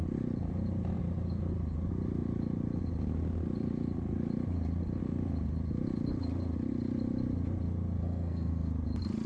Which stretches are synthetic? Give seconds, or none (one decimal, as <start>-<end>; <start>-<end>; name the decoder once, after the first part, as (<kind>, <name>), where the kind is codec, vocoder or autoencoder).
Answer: 8.0-8.7 (codec, SNAC)